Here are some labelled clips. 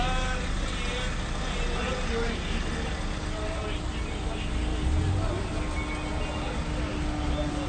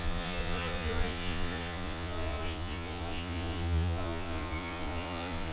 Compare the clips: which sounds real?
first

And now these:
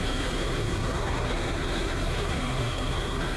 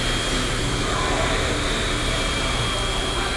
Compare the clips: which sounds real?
second